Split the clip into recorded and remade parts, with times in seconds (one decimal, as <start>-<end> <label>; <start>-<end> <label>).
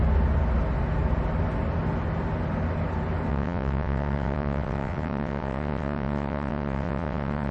0.0-3.3 recorded; 3.3-7.5 remade